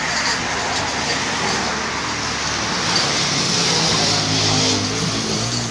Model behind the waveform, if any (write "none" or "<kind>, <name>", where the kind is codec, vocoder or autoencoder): none